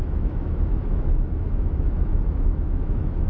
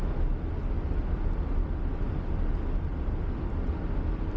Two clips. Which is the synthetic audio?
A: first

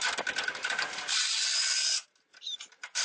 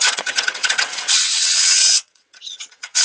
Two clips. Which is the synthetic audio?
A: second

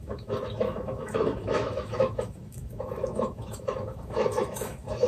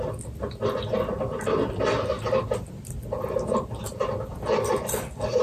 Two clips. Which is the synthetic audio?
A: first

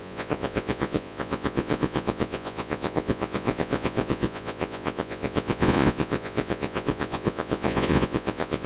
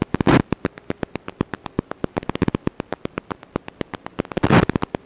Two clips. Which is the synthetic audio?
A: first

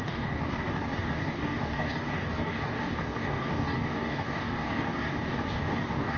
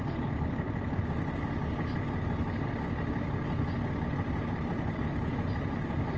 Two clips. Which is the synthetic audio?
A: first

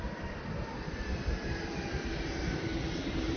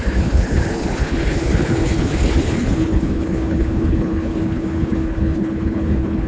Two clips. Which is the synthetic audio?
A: second